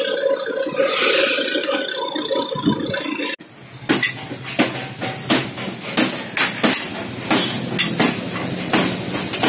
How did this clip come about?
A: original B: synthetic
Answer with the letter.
A